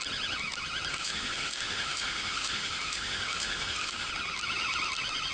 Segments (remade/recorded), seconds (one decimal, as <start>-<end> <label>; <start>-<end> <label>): 0.0-0.9 recorded; 0.9-4.1 remade; 4.1-5.3 recorded